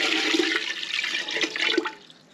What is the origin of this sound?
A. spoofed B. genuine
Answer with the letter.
B